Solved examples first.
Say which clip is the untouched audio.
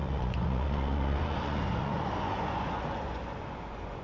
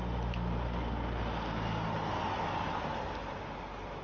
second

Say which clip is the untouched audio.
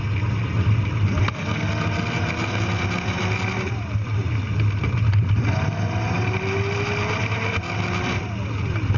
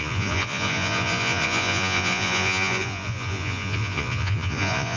first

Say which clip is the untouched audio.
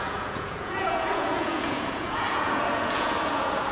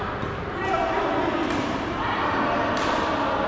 second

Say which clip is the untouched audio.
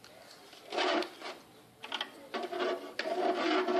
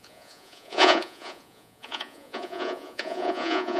first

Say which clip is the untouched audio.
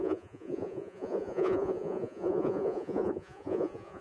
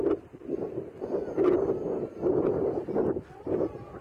second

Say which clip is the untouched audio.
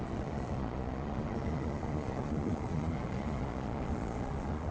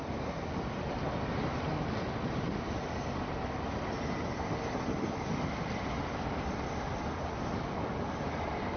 second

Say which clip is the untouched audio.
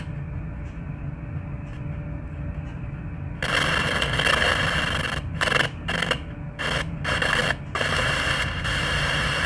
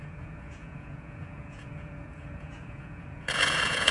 first